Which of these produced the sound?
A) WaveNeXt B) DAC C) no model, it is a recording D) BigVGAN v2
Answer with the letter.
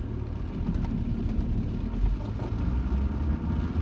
C